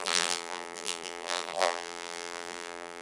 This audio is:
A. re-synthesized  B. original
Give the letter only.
A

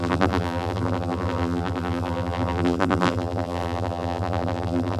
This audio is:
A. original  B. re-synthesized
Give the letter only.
B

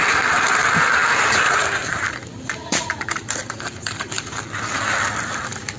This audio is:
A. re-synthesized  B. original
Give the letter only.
A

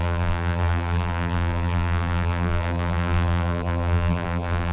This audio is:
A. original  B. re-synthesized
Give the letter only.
B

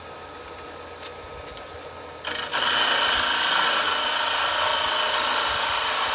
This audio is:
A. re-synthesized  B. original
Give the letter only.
B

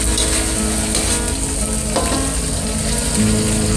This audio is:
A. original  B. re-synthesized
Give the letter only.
A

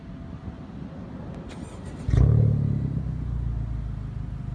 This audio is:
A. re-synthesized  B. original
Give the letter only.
B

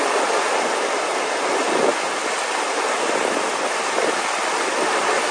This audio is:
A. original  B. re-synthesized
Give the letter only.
A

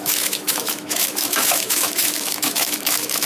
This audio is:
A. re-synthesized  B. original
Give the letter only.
A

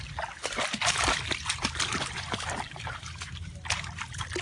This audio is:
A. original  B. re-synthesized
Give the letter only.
A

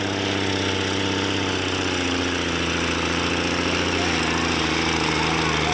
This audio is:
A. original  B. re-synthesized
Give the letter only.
A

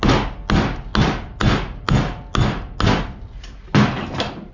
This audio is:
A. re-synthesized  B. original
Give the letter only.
B